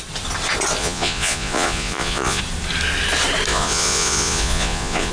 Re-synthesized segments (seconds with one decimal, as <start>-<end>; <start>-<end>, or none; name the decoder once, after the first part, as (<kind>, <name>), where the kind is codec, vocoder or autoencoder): 0.8-2.4 (vocoder, Vocos); 3.5-5.1